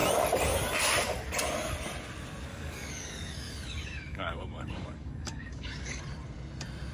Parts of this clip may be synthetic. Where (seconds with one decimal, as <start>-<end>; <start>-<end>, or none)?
2.5-6.0